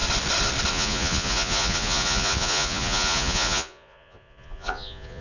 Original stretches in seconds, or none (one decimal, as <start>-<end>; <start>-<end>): 0.0-0.7